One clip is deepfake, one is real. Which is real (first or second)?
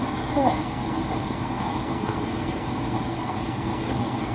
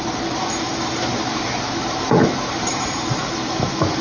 second